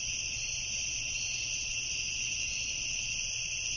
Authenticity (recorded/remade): recorded